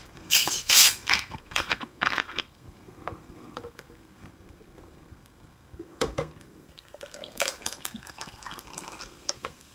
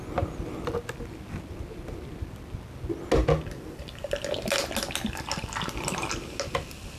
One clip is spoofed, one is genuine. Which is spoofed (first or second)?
first